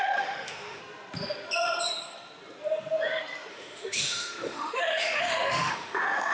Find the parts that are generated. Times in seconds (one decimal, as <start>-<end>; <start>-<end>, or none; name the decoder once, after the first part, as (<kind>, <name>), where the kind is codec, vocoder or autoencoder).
0.0-0.8 (autoencoder, DAC-VAE); 3.5-6.3

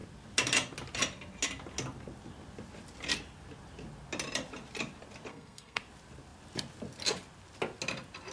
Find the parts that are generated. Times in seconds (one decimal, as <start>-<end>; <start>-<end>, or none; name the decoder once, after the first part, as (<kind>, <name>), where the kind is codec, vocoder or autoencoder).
5.3-5.8 (codec, SNAC)

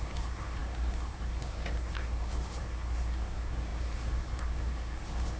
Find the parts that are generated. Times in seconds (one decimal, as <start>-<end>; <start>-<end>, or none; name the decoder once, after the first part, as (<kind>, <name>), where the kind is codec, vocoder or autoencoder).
0.0-5.4 (codec, SNAC)

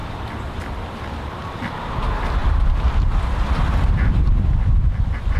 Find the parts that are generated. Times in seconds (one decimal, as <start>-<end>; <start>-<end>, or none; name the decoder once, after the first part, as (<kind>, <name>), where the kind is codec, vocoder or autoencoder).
0.0-5.4 (vocoder, BigVGAN v2)

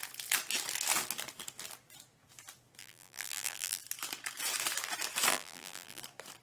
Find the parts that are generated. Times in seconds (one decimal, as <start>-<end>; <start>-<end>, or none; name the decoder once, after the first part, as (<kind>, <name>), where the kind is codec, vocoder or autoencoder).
2.8-3.8 (vocoder, BigVGAN v2); 5.3-6.0

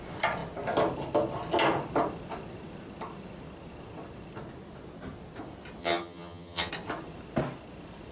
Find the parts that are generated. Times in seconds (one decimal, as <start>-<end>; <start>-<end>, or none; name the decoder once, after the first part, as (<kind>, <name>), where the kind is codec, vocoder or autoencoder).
5.8-6.7 (vocoder, HiFi-GAN)

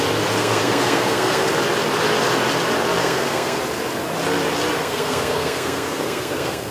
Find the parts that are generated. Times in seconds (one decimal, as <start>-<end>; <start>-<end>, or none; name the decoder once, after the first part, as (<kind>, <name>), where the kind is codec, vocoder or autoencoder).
0.4-1.5 (codec, SNAC); 3.0-3.6; 4.8-6.7

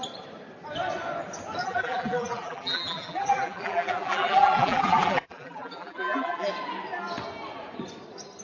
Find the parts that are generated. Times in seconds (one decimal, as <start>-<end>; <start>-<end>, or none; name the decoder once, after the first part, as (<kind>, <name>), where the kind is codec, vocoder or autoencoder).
1.6-6.5 (vocoder, BigVGAN v2)